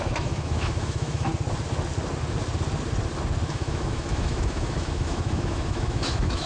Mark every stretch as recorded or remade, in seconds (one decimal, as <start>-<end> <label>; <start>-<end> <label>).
0.0-1.3 remade; 1.3-3.5 recorded; 3.5-6.5 remade